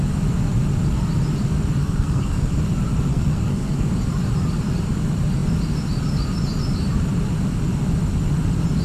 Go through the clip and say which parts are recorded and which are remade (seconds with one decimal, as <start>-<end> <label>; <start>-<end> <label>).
0.0-1.8 recorded; 1.8-2.6 remade; 2.6-3.1 recorded; 3.1-3.9 remade; 3.9-8.8 recorded